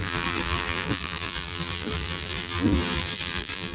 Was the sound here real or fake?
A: fake